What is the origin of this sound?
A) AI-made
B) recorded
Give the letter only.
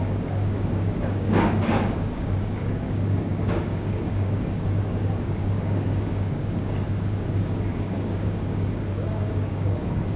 A